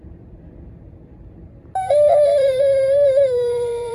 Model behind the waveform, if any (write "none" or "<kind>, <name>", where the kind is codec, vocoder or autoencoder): vocoder, BigVGAN v2